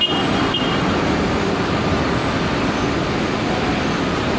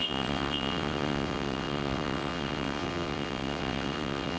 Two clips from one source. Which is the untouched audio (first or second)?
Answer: first